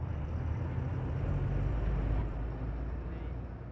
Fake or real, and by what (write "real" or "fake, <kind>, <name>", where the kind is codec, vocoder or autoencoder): real